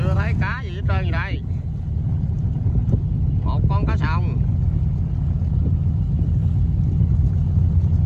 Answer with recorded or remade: recorded